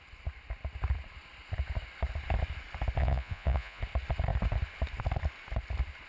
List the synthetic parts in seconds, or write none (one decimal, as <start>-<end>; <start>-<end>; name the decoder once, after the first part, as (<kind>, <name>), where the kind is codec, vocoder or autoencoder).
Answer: 3.0-3.8 (vocoder, Vocos)